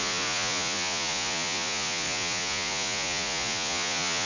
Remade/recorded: remade